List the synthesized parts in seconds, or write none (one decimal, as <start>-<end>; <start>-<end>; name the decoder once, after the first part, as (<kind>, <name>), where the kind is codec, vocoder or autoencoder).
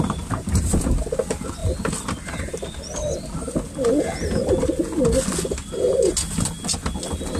none